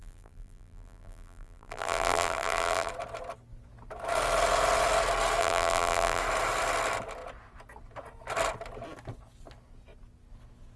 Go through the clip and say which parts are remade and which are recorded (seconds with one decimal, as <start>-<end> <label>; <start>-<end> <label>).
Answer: 0.0-2.9 remade; 2.9-5.4 recorded; 5.4-6.2 remade; 6.2-10.8 recorded